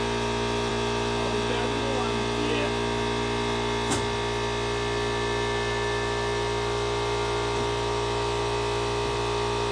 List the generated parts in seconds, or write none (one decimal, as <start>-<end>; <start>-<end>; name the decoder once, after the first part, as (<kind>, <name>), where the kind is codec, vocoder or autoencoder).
none